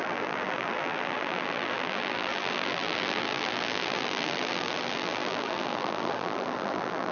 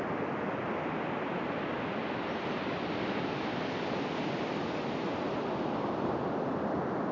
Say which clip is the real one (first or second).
second